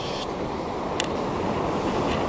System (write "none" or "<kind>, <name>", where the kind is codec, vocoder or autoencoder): none